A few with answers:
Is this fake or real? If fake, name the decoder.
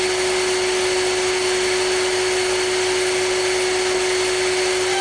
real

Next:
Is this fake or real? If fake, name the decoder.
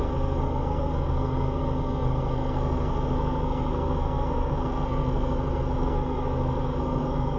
fake, codec, SNAC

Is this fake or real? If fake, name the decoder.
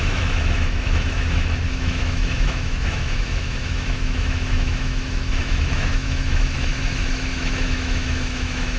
fake, autoencoder, DAC-VAE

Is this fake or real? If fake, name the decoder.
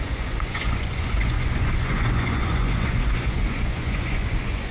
fake, vocoder, Vocos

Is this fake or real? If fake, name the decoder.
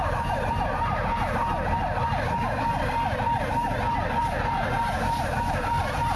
fake, vocoder, BigVGAN v2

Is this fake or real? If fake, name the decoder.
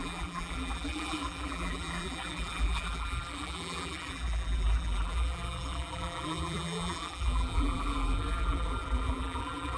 fake, vocoder, BigVGAN v2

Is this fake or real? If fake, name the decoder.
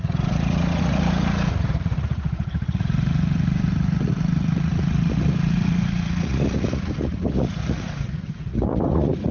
fake, vocoder, Vocos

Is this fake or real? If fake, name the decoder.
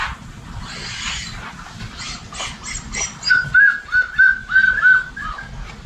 real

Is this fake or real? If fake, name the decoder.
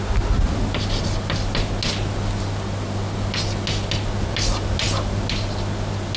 real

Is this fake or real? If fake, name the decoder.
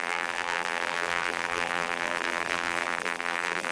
fake, vocoder, BigVGAN v2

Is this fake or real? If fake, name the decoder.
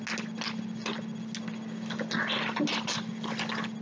real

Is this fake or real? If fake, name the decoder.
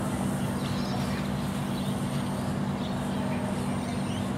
real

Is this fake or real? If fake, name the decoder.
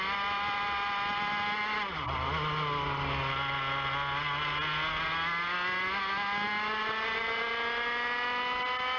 real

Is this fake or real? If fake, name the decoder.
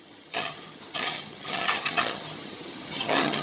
fake, vocoder, HiFi-GAN